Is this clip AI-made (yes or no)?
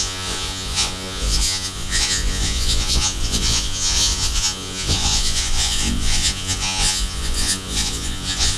yes